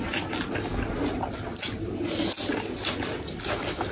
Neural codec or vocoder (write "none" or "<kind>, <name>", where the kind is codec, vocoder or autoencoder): none